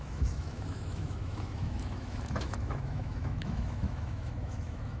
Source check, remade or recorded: remade